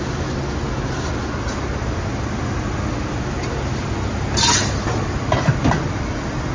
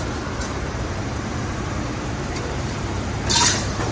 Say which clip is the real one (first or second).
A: first